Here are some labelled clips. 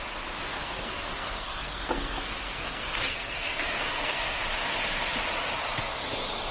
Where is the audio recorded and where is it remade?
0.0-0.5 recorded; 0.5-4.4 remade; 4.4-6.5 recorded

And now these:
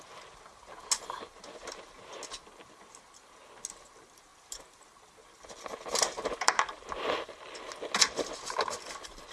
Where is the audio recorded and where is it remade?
0.0-9.3 recorded

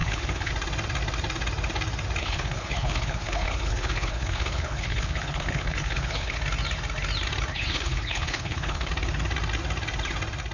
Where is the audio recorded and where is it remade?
0.0-0.5 remade; 0.5-2.2 recorded; 2.2-6.4 remade; 6.4-7.5 recorded; 7.5-8.9 remade; 8.9-10.5 recorded

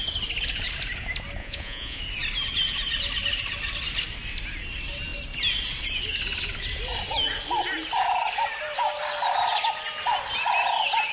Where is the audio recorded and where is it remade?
0.0-1.4 recorded; 1.4-2.0 remade; 2.0-11.1 recorded

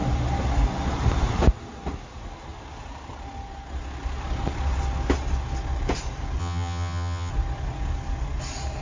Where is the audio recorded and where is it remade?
0.0-6.4 recorded; 6.4-7.3 remade; 7.3-8.8 recorded

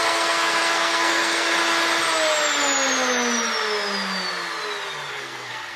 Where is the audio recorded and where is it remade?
0.0-1.6 remade; 1.6-5.1 recorded; 5.1-5.8 remade

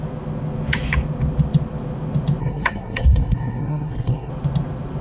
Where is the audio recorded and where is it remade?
0.0-2.4 recorded; 2.4-4.3 remade; 4.3-5.0 recorded

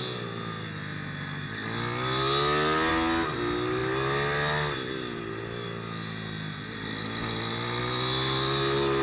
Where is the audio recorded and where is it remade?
0.0-9.0 recorded